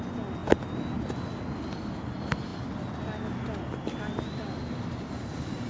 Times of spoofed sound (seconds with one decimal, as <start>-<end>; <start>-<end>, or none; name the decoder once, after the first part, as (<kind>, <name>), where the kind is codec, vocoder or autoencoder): none